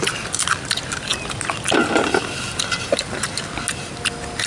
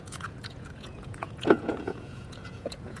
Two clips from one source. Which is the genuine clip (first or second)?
first